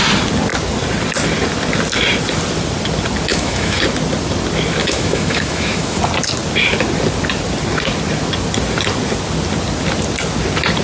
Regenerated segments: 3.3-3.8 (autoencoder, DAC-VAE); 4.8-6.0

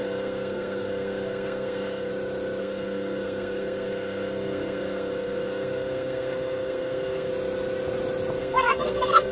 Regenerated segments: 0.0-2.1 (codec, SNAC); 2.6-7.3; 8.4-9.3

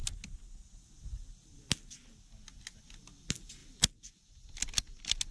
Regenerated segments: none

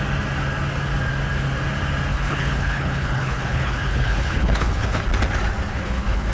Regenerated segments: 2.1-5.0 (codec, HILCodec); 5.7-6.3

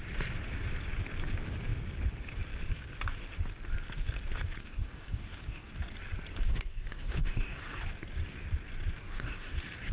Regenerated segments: 4.6-5.7 (codec, DAC); 6.5-7.8; 9.0-9.5

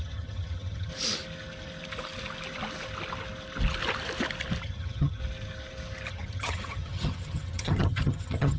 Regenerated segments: 0.0-0.9 (vocoder, HiFi-GAN); 4.6-5.2; 6.1-8.6